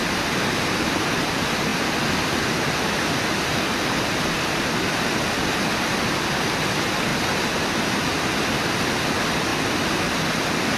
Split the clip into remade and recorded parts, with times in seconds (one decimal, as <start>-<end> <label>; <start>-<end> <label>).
0.0-7.1 recorded; 7.1-7.7 remade; 7.7-9.5 recorded; 9.5-10.1 remade; 10.1-10.8 recorded